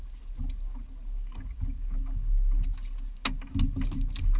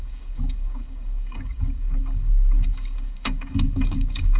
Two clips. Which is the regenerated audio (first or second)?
second